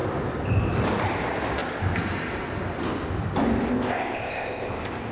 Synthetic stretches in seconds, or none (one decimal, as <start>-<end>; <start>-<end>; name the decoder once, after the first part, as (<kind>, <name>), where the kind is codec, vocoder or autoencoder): 3.7-5.1 (codec, ZipCodec)